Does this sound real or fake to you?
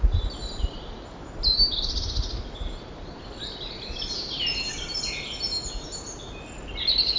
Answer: real